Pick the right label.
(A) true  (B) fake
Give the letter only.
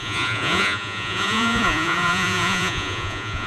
B